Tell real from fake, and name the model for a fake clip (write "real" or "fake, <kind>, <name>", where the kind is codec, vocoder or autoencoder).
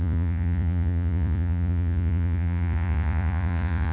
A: fake, vocoder, Vocos